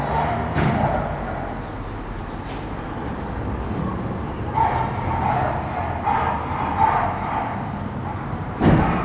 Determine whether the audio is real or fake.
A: real